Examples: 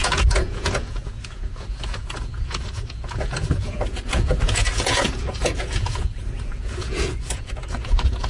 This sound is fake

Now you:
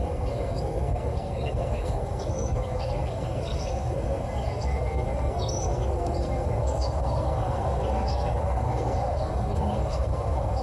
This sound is fake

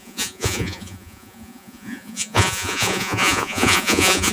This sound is fake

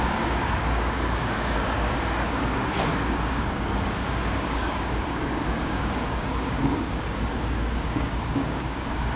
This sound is fake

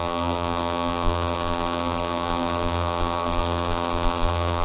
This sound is fake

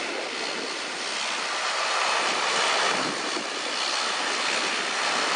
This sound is real